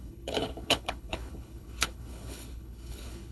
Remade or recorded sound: remade